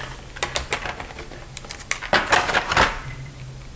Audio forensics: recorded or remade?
recorded